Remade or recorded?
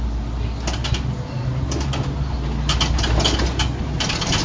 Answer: recorded